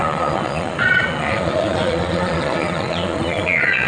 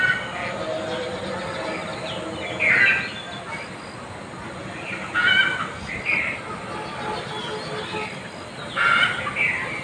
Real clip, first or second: second